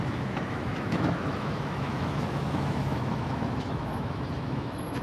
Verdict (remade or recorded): remade